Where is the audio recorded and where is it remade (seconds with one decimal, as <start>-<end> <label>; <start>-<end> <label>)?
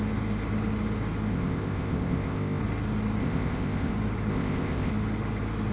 0.0-1.3 recorded; 1.3-2.6 remade; 2.6-3.2 recorded; 3.2-3.9 remade; 3.9-4.3 recorded; 4.3-4.9 remade; 4.9-5.7 recorded